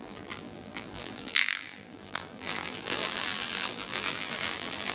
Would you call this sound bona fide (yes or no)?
no